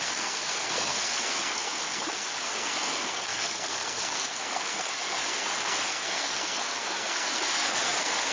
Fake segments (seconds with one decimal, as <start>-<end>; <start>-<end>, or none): 0.0-8.3